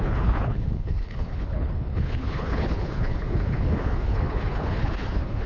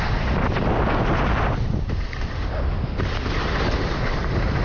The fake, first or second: first